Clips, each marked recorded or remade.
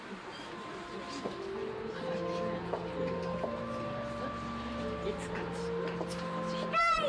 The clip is recorded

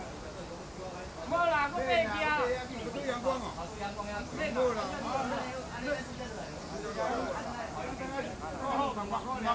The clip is recorded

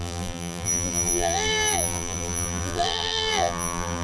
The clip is remade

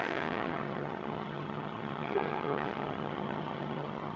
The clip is remade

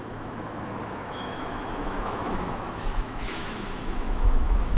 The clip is remade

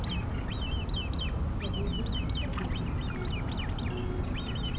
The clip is recorded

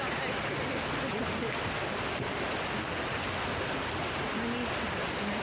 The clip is recorded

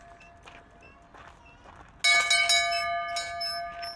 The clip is recorded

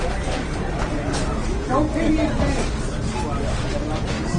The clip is recorded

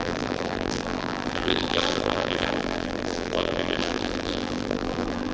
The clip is remade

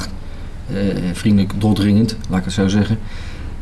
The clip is recorded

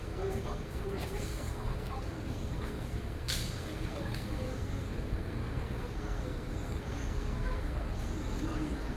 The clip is remade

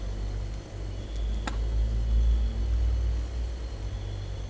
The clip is recorded